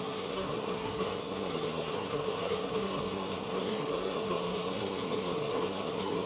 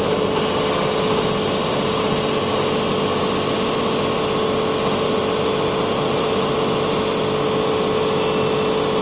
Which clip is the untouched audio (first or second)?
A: second